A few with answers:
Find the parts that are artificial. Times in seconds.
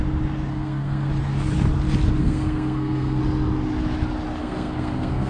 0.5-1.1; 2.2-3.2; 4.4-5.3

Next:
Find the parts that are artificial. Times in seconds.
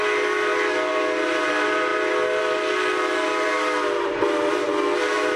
none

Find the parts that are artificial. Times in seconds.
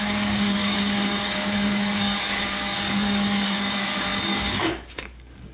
0.0-5.5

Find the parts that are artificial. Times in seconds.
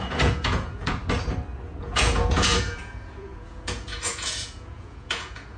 0.0-1.0; 1.8-5.6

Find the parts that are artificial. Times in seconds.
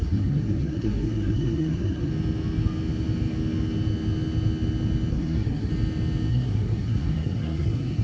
0.0-2.1; 5.1-5.7; 6.3-8.0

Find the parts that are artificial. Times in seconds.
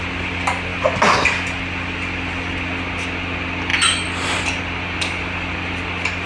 none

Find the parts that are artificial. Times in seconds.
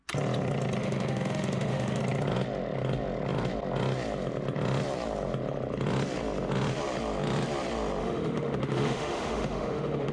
0.8-2.0; 8.0-10.1